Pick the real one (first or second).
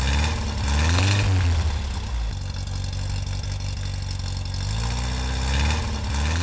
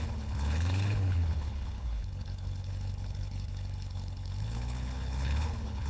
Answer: first